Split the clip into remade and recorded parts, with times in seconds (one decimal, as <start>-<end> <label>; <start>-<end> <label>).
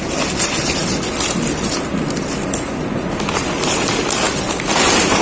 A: 0.0-5.2 recorded